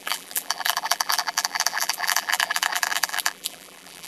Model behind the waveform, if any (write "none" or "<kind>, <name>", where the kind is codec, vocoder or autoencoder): vocoder, BigVGAN v2